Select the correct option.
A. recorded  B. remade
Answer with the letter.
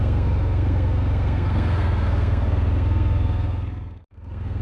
B